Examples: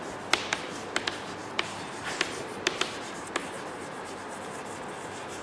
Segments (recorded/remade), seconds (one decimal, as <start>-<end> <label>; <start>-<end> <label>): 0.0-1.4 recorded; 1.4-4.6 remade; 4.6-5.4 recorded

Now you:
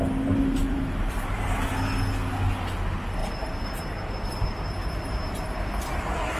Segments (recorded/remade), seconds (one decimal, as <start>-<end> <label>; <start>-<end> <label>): 0.0-0.6 recorded; 0.6-1.7 remade; 1.7-3.2 recorded; 3.2-6.0 remade; 6.0-6.4 recorded

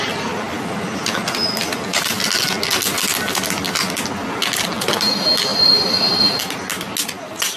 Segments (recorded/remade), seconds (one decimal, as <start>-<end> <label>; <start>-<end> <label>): 0.0-5.5 recorded; 5.5-6.4 remade; 6.4-7.6 recorded